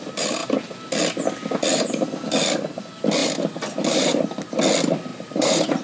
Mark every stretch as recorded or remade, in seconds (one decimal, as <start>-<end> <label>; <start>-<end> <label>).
0.0-3.2 recorded; 3.2-4.2 remade; 4.2-5.1 recorded; 5.1-5.8 remade

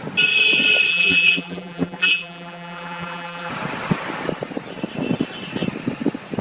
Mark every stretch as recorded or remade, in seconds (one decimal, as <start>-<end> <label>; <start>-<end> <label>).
0.0-0.9 recorded; 0.9-3.5 remade; 3.5-6.4 recorded